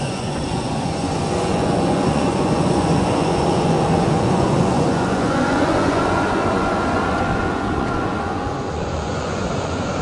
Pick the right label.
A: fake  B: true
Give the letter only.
A